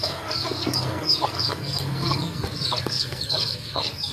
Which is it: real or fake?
fake